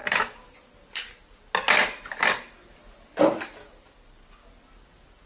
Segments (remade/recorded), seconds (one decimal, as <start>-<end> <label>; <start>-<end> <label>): 0.0-5.3 recorded